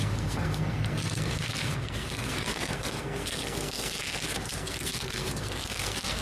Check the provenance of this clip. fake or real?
fake